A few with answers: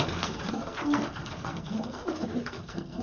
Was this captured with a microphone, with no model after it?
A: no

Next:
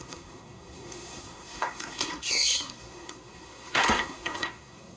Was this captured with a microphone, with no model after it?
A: no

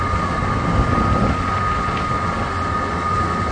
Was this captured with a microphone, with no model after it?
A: yes